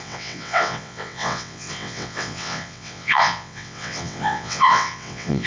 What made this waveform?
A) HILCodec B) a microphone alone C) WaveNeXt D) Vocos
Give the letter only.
C